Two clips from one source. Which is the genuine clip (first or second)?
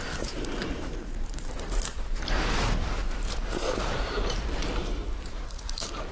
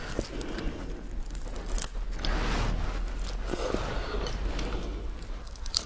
second